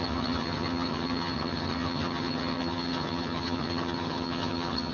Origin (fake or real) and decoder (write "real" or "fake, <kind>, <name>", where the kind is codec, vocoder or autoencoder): fake, vocoder, HiFi-GAN